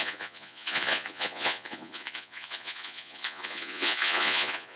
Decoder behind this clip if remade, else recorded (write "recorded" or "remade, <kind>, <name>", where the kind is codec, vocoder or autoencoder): remade, vocoder, Vocos